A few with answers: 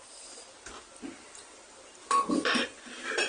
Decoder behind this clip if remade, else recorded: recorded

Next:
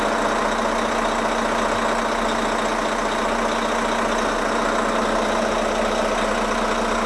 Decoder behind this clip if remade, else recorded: recorded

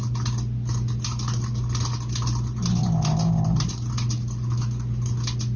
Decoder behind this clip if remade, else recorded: recorded